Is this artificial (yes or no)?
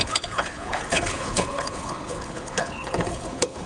yes